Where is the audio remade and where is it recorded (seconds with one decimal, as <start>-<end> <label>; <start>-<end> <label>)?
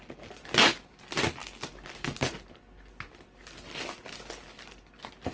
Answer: 0.0-5.3 recorded